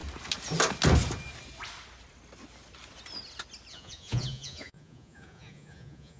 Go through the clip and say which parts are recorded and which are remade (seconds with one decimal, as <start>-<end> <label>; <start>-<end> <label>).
0.0-3.7 recorded; 3.7-6.2 remade